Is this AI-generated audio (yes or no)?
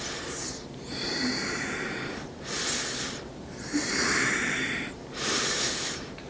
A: yes